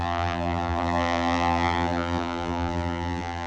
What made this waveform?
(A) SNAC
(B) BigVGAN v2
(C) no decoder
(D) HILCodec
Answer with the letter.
B